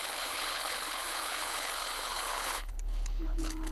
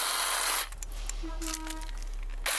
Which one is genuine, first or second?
second